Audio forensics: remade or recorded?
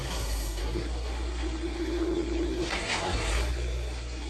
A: remade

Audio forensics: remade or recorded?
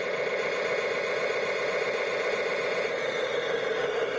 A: recorded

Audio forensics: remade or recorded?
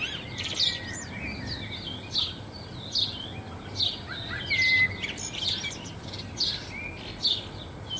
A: recorded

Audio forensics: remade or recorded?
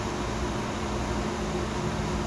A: recorded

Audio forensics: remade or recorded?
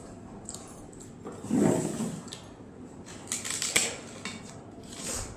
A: recorded